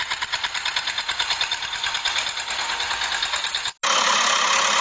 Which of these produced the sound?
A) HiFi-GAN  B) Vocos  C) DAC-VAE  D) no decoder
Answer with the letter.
D